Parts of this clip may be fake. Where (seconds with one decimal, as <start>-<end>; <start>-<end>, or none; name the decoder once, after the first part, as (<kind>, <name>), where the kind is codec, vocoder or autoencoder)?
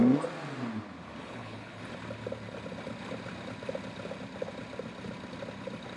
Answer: 1.2-1.8 (codec, HILCodec)